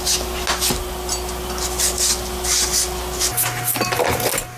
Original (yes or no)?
yes